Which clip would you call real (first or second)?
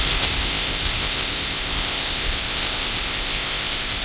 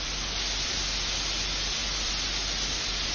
second